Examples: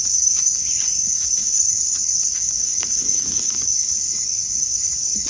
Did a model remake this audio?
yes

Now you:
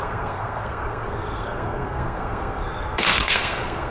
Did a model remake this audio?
yes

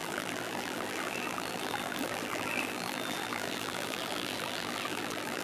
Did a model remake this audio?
yes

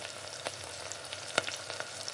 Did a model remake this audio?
no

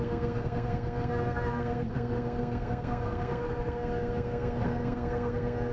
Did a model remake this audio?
yes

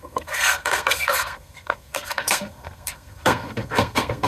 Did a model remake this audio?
yes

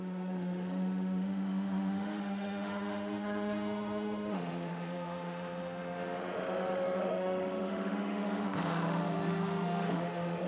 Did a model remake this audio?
yes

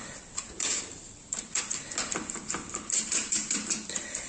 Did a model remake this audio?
yes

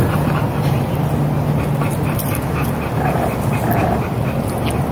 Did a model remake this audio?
no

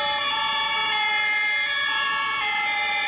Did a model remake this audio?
no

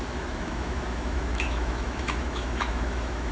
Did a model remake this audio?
yes